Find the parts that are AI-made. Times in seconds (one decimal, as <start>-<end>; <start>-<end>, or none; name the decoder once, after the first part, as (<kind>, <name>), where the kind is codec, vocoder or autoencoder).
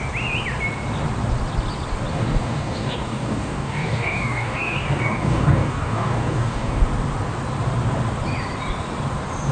2.1-6.8 (codec, DAC)